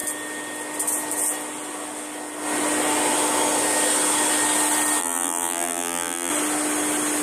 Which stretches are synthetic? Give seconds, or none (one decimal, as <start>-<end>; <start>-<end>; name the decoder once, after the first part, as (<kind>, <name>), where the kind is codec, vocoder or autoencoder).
5.0-6.3 (vocoder, BigVGAN v2)